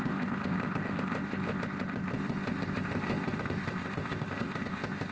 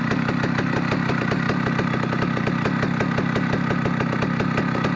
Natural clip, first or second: second